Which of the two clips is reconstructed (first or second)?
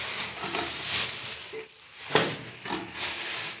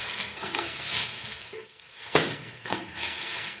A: second